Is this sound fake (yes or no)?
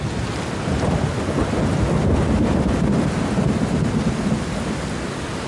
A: no